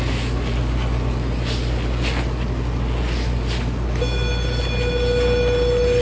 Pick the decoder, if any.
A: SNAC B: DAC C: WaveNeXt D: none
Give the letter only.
D